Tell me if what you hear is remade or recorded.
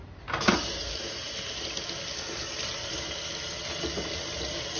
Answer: recorded